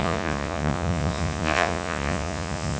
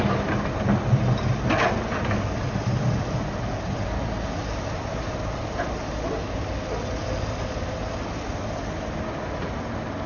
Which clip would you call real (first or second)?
second